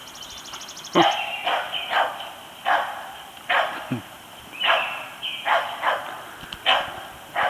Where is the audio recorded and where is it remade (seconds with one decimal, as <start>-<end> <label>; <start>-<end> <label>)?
0.0-7.5 recorded